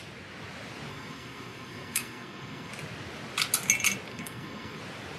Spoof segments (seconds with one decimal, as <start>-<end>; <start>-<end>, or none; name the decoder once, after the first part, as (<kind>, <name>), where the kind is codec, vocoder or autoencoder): 0.9-2.7 (codec, SNAC); 4.1-4.8